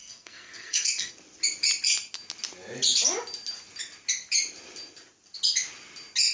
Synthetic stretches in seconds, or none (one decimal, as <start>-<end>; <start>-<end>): 0.0-1.1